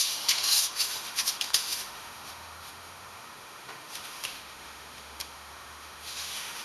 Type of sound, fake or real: fake